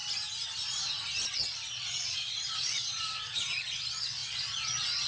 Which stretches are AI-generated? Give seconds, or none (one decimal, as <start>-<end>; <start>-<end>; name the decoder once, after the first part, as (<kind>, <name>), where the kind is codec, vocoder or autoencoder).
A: 1.3-5.1 (vocoder, Vocos)